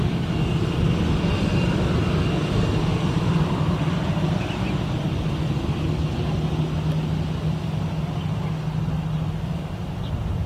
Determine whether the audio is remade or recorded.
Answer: recorded